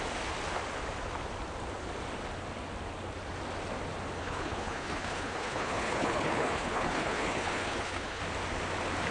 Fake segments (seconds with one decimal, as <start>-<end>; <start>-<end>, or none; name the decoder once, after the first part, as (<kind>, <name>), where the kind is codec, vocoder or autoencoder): 4.2-8.2 (codec, HILCodec)